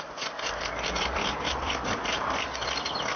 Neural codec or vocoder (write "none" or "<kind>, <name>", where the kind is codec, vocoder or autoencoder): none